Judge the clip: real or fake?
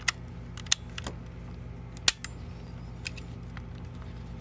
real